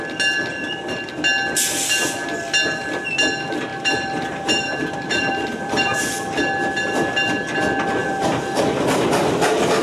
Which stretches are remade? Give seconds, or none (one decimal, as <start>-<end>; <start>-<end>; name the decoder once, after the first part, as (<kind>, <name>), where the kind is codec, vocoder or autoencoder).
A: 3.7-6.0 (vocoder, BigVGAN v2); 8.0-8.8